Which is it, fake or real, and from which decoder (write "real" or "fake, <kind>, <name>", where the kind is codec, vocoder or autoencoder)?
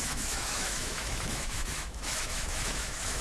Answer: fake, autoencoder, DAC-VAE